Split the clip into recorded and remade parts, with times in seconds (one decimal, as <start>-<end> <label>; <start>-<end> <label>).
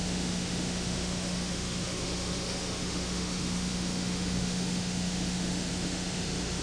0.0-6.6 remade